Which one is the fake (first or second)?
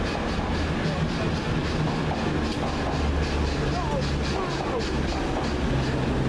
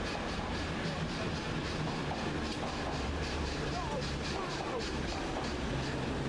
second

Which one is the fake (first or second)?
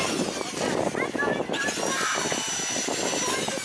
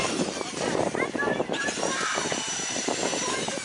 second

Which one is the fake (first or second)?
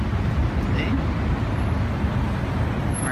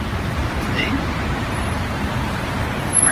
second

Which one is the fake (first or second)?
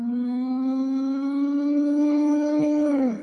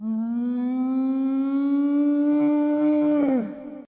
first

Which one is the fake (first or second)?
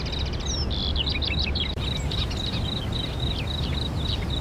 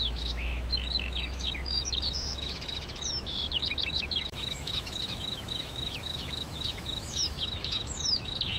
second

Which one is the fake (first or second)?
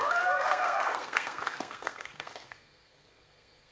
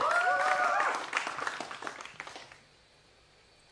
first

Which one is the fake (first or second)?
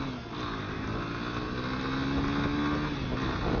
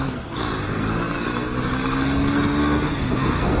second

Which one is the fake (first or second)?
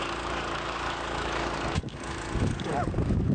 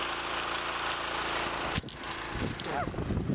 first